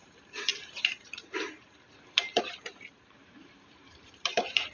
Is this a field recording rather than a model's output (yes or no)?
no